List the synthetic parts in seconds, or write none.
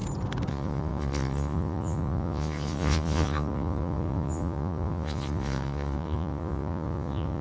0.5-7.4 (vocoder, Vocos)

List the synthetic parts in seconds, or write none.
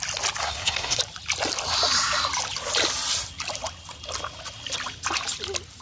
0.4-1.0 (codec, SNAC)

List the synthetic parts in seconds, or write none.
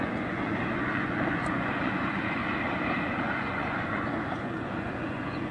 0.0-2.4 (vocoder, Vocos); 3.0-5.5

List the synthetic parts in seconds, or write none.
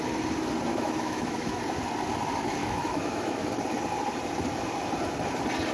0.7-1.6 (autoencoder, DAC-VAE); 2.6-3.5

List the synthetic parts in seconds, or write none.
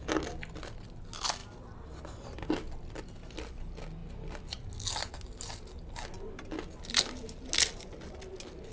none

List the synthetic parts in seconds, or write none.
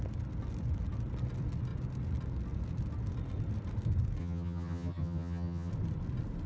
4.2-5.7 (vocoder, HiFi-GAN)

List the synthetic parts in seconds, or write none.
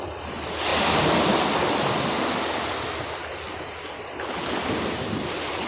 none